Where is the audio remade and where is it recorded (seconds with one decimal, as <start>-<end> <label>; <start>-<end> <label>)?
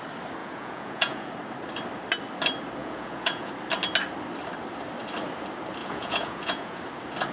0.0-0.4 recorded; 0.4-1.3 remade; 1.3-2.8 recorded; 2.8-3.5 remade; 3.5-5.8 recorded; 5.8-6.8 remade; 6.8-7.3 recorded